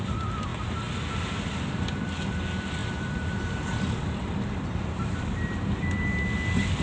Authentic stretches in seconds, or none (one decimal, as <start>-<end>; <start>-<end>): 0.0-6.8